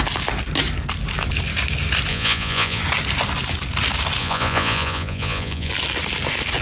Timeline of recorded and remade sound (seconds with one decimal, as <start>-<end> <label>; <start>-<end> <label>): 0.0-2.1 recorded; 2.1-2.8 remade; 2.8-4.2 recorded; 4.2-5.7 remade; 5.7-6.6 recorded